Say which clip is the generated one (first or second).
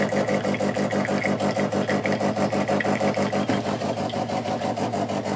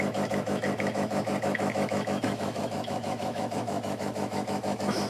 second